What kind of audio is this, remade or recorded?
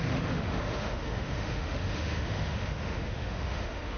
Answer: remade